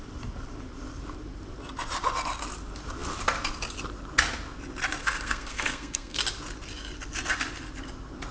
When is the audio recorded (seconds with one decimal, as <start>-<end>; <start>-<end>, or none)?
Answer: 0.0-5.0; 6.2-8.3